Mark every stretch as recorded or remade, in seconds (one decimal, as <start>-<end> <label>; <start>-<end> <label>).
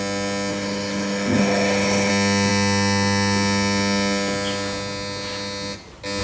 0.0-0.5 recorded; 0.5-2.1 remade; 2.1-6.2 recorded